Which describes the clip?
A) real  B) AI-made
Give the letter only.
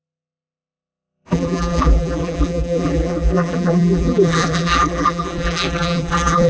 B